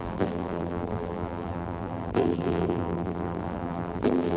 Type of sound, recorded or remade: remade